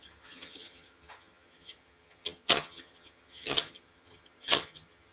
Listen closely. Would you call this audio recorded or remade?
remade